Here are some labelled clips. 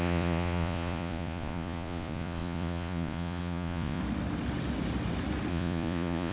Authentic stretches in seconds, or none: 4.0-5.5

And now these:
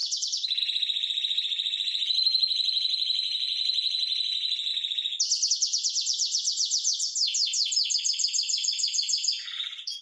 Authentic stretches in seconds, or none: 4.7-5.5; 6.9-7.9

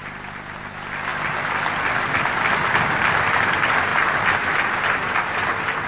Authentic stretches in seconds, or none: 0.6-5.9

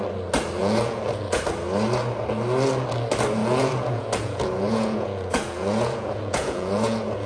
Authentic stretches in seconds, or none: 0.0-0.6; 1.4-3.4

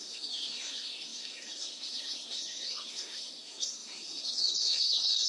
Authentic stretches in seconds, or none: none

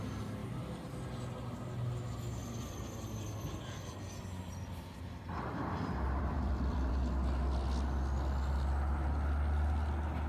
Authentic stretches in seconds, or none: 0.0-0.4; 0.9-2.4; 6.9-10.3

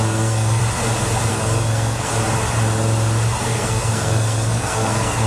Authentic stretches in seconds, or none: 0.6-1.3; 2.1-3.4